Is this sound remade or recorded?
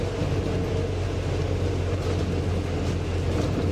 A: recorded